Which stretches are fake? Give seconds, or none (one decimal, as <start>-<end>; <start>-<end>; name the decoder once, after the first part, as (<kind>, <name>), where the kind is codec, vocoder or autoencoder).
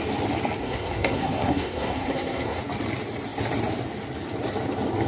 0.6-2.6 (codec, SNAC)